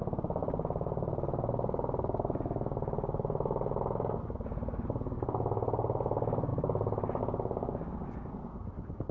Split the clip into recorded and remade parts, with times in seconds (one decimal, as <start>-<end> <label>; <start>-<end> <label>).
0.0-9.1 recorded